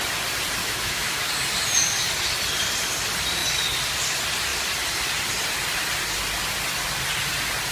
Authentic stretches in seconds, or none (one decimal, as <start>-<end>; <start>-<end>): 0.0-0.6; 1.3-7.7